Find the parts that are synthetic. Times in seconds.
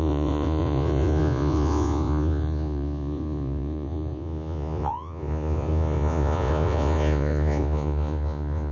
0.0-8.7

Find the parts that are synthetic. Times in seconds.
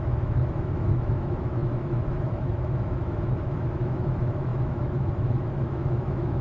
0.0-6.4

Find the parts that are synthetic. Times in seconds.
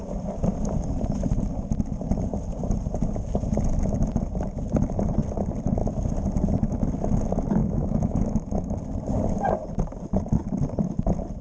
7.6-8.7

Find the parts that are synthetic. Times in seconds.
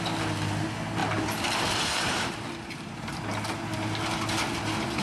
1.0-3.3